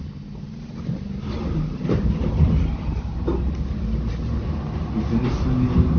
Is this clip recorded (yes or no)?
yes